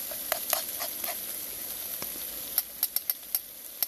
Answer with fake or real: real